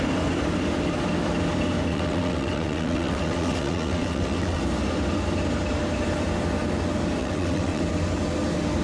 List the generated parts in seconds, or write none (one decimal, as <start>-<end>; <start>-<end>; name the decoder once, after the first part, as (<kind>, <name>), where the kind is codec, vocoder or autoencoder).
1.9-4.6 (vocoder, WaveNeXt); 7.2-7.8